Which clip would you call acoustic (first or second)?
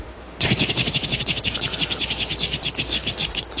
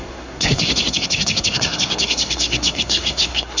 first